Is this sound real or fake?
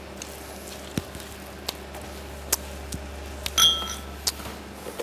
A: real